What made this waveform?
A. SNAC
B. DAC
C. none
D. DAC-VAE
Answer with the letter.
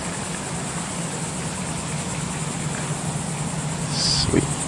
C